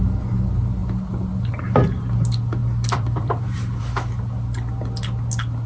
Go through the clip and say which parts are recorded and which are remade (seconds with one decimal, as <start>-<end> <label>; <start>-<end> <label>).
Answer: 0.0-2.6 recorded; 2.6-3.8 remade; 3.8-5.7 recorded